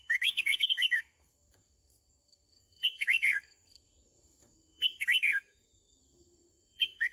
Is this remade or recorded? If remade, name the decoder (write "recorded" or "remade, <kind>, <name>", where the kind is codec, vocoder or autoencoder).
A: remade, codec, SNAC